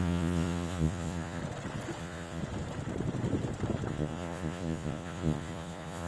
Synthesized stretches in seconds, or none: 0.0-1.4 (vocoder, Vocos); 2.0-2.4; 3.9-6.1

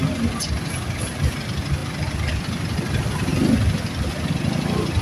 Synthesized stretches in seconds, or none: none

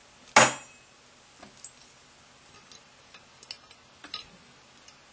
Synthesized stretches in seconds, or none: none